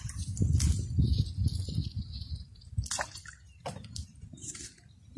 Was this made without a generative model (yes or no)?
yes